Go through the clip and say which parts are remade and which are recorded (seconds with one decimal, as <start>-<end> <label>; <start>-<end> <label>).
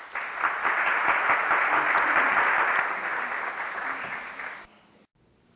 0.0-5.6 recorded